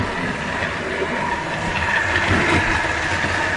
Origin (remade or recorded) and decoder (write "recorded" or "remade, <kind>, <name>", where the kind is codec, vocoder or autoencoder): remade, vocoder, BigVGAN v2